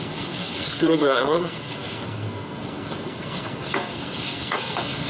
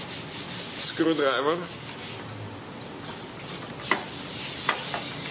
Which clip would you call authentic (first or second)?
second